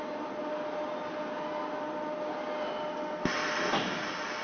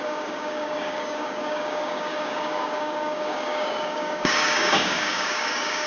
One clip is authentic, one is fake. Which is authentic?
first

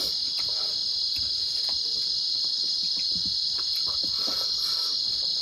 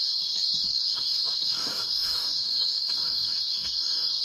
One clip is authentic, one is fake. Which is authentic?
first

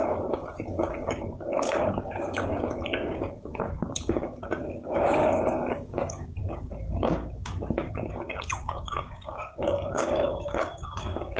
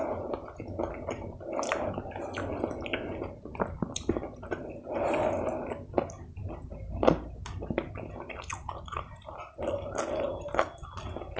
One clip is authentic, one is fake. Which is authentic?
second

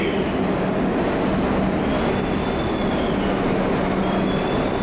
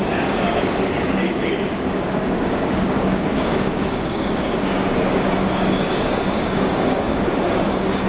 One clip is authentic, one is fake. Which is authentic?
first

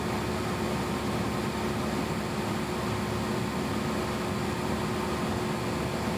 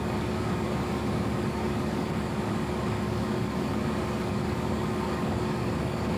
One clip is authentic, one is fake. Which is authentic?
first